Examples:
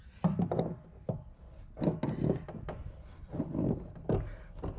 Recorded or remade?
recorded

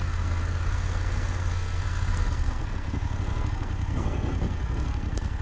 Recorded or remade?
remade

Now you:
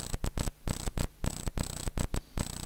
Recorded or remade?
recorded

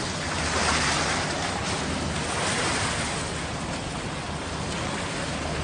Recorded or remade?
recorded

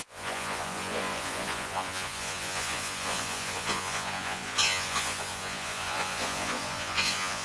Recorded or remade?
remade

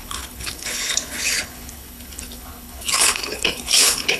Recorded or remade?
remade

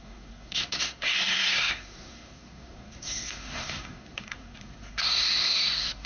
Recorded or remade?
remade